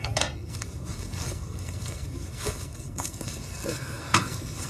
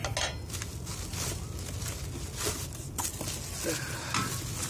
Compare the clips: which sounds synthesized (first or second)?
first